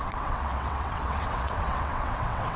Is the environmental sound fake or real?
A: fake